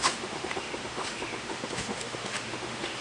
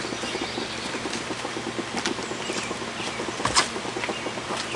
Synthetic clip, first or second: first